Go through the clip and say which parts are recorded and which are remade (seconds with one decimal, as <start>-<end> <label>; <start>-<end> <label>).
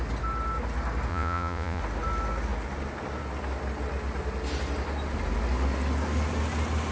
0.0-1.1 recorded; 1.1-1.8 remade; 1.8-6.9 recorded